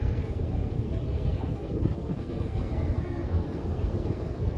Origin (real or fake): fake